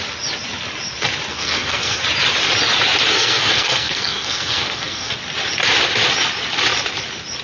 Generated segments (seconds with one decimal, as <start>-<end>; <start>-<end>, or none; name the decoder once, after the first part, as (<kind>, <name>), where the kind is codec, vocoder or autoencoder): 1.3-2.0 (codec, SNAC); 3.1-5.1